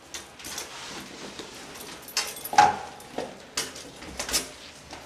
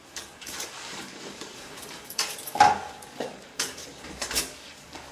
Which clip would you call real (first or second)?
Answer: first